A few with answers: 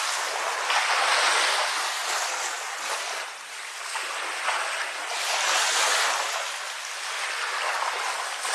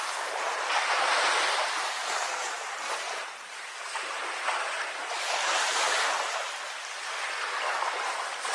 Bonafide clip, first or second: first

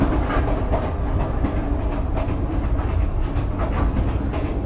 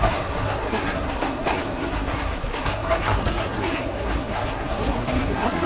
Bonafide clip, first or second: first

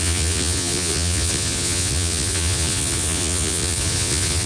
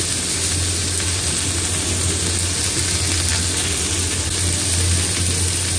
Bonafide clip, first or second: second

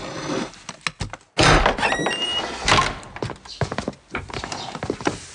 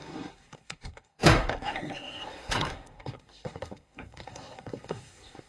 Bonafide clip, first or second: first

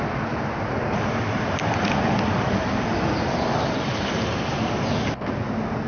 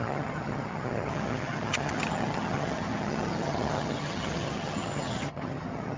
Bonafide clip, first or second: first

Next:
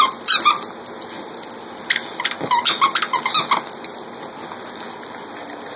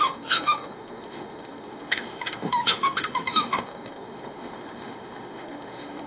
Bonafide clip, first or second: first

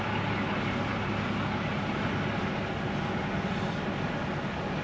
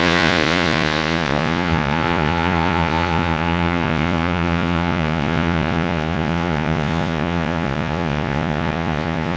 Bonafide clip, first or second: first